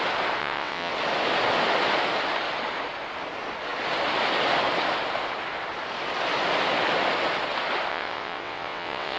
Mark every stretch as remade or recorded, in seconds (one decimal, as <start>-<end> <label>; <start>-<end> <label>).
0.0-0.4 recorded; 0.4-0.9 remade; 0.9-7.9 recorded; 7.9-9.2 remade